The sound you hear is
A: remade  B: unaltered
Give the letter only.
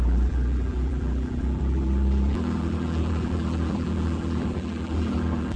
A